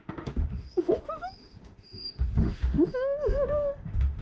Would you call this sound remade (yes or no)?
yes